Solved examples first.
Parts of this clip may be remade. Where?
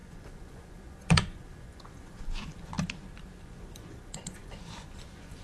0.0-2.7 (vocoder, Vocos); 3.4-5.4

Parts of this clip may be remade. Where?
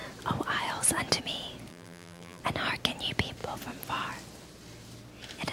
1.7-2.4 (vocoder, BigVGAN v2)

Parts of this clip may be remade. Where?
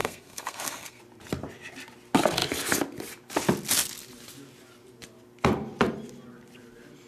0.0-1.0 (codec, SNAC)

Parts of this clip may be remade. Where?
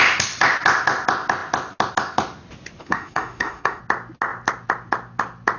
2.8-3.8 (autoencoder, DAC-VAE)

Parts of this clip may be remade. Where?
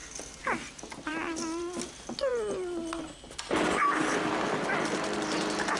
none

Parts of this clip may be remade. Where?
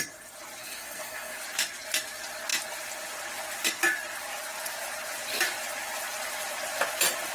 0.6-1.4 (codec, SNAC)